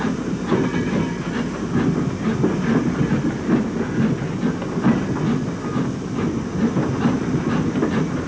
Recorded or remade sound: recorded